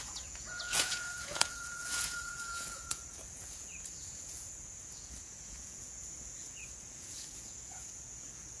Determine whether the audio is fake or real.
fake